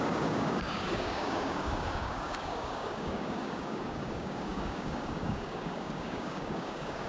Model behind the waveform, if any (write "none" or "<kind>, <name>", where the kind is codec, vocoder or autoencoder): codec, DAC